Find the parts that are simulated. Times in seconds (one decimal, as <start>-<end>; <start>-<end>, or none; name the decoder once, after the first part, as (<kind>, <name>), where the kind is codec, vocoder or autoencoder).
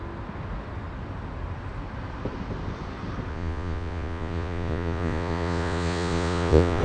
3.3-6.8 (vocoder, Vocos)